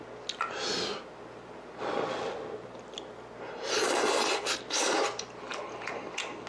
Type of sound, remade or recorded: recorded